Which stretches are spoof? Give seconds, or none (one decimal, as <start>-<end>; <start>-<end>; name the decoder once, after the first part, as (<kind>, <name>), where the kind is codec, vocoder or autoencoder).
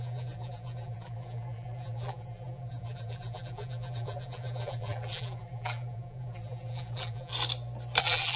0.0-7.3 (vocoder, BigVGAN v2); 8.0-8.4